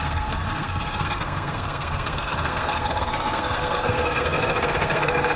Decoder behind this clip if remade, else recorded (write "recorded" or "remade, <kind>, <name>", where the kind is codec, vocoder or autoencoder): remade, codec, SNAC